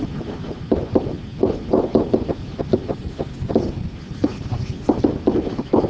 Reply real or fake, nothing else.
real